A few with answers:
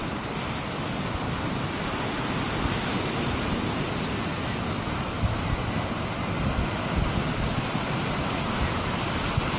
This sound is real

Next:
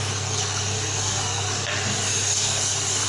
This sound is fake